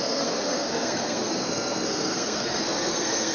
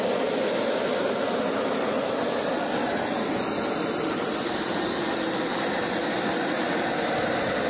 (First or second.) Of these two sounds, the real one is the second